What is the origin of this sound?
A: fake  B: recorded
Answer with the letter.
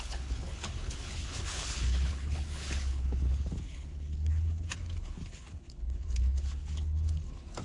A